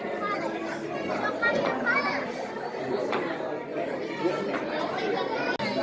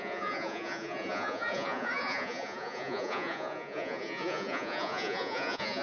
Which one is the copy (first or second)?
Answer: second